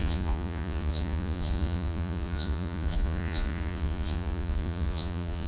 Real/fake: fake